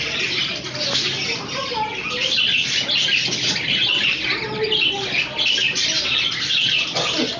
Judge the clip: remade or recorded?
recorded